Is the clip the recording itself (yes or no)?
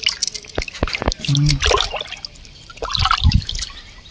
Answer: yes